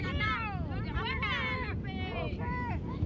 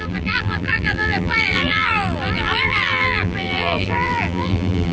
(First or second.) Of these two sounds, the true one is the first